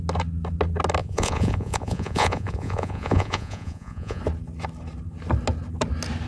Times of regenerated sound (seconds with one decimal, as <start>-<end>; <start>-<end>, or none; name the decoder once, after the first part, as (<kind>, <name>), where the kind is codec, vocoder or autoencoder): 1.0-4.2 (vocoder, Vocos)